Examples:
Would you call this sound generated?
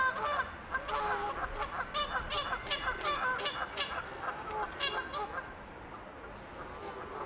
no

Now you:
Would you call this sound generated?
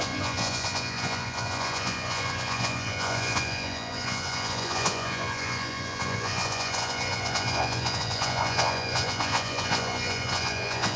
yes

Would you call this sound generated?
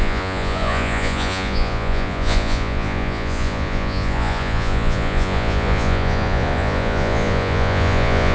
yes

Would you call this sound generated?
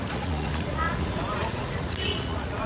yes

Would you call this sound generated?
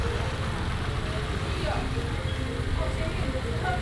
no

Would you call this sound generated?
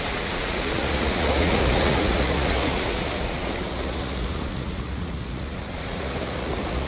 yes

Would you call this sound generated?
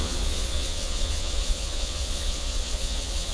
yes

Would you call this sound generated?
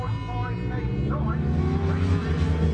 no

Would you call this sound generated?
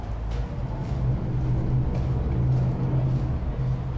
no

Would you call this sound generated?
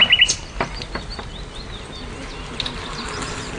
no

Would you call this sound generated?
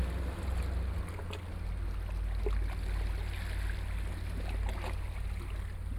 no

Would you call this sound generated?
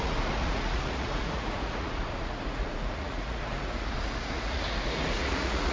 yes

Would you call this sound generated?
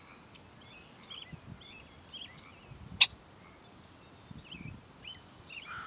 no